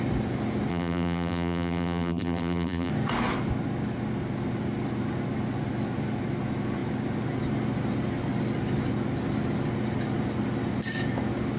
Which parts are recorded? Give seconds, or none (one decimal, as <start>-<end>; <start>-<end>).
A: 0.0-0.7; 2.9-11.6